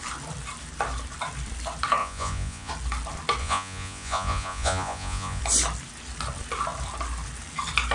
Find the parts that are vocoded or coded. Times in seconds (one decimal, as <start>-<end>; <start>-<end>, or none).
2.0-2.7; 3.4-5.4